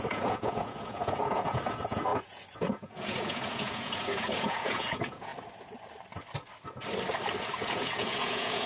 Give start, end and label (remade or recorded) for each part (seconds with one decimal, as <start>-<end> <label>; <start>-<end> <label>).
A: 0.0-5.3 remade; 5.3-7.4 recorded; 7.4-8.7 remade